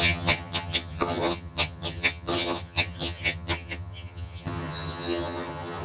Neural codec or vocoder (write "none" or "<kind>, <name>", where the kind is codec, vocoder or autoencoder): vocoder, HiFi-GAN